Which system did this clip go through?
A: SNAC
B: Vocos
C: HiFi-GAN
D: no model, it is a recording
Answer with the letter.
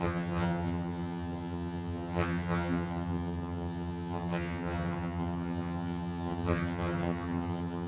C